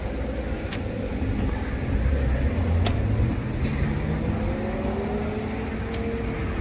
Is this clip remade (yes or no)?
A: no